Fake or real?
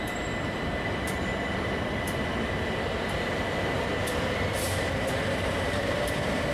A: real